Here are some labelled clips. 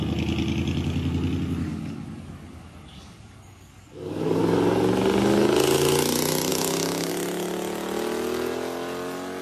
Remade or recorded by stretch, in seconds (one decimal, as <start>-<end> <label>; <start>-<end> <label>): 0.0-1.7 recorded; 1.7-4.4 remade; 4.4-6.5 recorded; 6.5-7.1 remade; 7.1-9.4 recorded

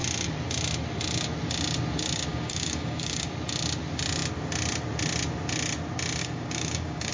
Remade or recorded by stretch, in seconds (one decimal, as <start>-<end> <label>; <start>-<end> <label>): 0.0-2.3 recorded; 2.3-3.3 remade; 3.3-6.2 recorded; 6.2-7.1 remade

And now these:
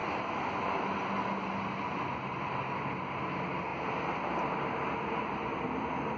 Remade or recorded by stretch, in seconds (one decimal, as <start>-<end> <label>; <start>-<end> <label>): 0.0-6.2 recorded

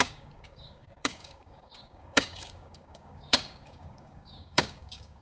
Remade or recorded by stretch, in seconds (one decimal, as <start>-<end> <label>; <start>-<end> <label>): 0.0-5.2 remade

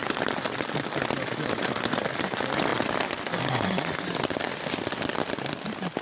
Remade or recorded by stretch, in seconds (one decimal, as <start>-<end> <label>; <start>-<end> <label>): 0.0-6.0 recorded